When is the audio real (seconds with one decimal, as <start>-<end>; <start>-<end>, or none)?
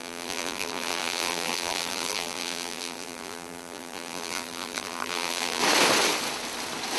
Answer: 5.6-7.0